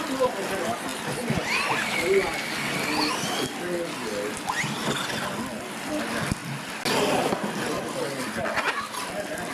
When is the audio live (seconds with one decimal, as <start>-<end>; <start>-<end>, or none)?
0.0-9.5